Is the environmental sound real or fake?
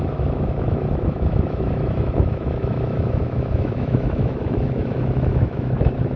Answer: fake